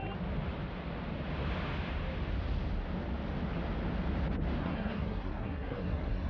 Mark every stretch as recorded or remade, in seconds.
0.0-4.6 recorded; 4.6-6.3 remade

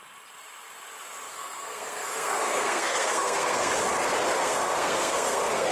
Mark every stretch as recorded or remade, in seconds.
0.0-1.3 recorded; 1.3-3.7 remade; 3.7-4.4 recorded; 4.4-5.7 remade

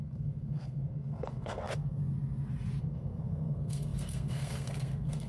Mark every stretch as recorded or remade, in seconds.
0.0-2.0 remade; 2.0-2.8 recorded; 2.8-5.3 remade

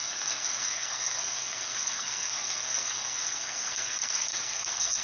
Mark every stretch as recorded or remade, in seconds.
0.0-5.0 remade

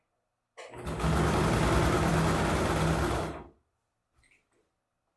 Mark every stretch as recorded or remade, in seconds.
0.0-5.2 recorded

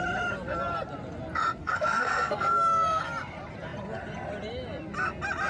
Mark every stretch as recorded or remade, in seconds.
0.0-1.6 recorded; 1.6-3.0 remade; 3.0-5.5 recorded